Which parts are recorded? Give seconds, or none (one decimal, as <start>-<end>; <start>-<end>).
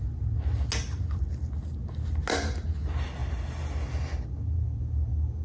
0.0-5.4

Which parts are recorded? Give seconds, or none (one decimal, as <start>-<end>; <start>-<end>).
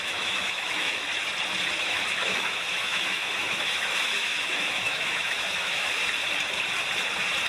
1.1-1.8; 6.0-7.5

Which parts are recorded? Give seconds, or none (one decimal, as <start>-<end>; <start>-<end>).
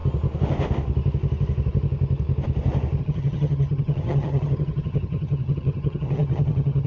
0.0-3.0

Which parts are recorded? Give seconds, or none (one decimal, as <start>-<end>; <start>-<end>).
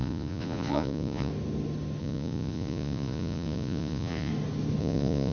1.3-2.0; 4.3-4.8